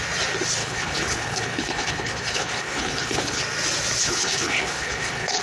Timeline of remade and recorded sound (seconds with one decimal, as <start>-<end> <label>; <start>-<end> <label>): 0.0-0.6 recorded; 0.6-3.4 remade; 3.4-4.0 recorded; 4.0-5.4 remade